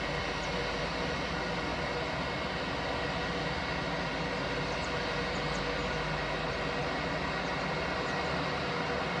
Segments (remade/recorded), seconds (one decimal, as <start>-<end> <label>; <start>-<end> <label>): 0.0-9.2 recorded